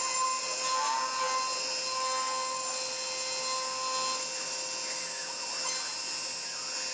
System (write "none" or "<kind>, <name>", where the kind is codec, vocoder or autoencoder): none